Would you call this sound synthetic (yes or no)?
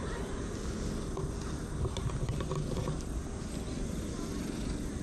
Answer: no